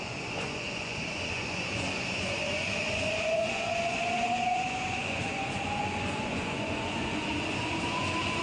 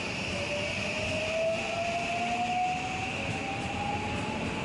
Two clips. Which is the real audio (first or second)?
second